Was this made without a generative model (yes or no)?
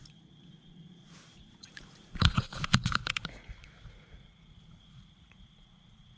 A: no